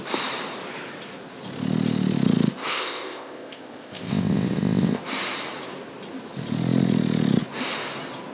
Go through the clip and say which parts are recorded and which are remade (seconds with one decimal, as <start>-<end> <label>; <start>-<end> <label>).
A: 0.0-2.6 recorded; 2.6-5.0 remade; 5.0-8.3 recorded